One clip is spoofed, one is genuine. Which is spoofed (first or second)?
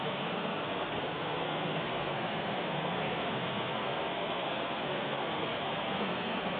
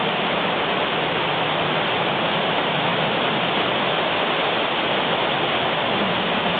first